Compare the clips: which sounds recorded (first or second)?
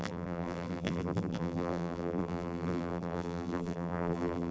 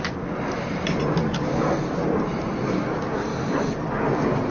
second